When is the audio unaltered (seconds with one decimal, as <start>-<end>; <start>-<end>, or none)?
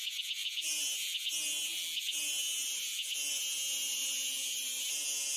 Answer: 0.0-5.4